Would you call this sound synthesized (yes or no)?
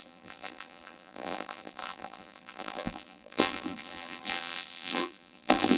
yes